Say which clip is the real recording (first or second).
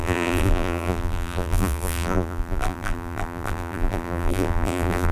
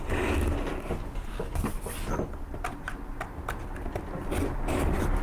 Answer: second